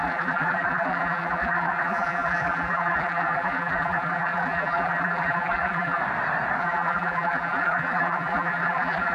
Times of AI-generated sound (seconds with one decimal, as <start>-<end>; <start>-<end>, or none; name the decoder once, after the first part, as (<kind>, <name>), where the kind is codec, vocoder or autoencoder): 0.0-6.0 (vocoder, BigVGAN v2); 6.6-9.1